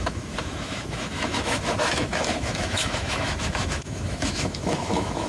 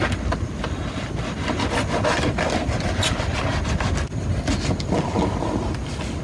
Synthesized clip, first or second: first